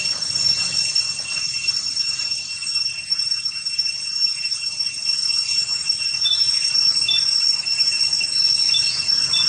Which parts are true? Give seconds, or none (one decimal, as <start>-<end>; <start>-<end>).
0.0-1.8; 4.8-5.2; 6.5-7.5; 8.0-9.5